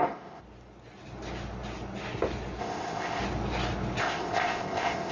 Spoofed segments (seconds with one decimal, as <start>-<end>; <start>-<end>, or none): 0.0-0.4; 2.6-3.2; 4.0-5.1